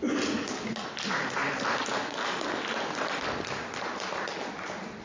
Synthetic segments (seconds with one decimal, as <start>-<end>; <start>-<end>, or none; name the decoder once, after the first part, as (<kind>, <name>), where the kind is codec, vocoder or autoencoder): none